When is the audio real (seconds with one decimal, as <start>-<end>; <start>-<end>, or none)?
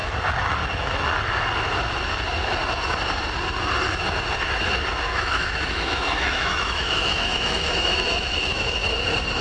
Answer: 0.0-5.1; 8.9-9.4